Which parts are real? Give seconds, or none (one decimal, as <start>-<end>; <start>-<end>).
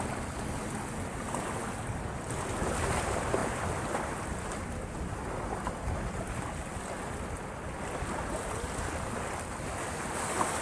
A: 0.0-10.6